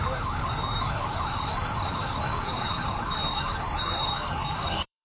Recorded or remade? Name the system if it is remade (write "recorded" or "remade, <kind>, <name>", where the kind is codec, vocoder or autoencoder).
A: remade, codec, DAC